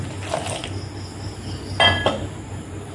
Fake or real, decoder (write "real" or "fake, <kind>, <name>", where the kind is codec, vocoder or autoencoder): real